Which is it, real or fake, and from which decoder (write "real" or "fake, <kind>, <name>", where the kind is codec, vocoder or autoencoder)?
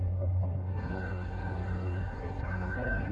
fake, codec, SNAC